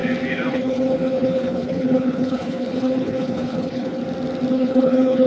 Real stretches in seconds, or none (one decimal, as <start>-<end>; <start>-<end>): 0.0-0.5; 4.0-4.5